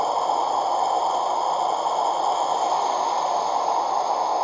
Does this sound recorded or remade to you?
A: recorded